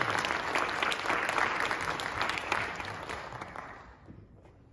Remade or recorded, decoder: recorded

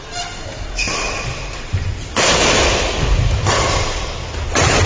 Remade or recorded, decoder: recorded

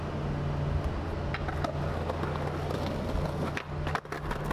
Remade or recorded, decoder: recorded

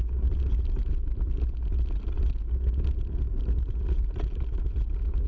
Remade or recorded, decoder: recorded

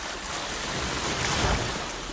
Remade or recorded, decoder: recorded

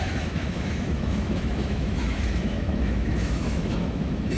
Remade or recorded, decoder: remade, autoencoder, DAC-VAE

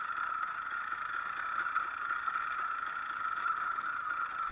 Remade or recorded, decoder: recorded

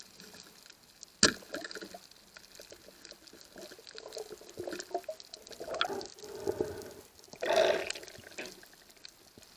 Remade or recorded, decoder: recorded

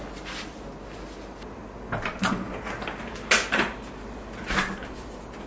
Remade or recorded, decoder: recorded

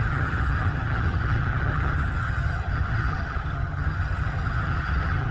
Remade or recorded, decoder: remade, vocoder, HiFi-GAN